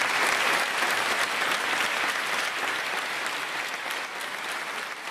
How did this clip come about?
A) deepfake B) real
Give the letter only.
B